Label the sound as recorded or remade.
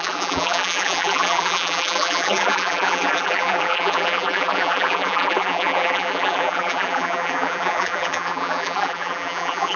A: remade